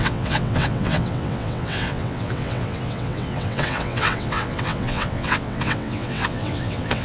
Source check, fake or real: fake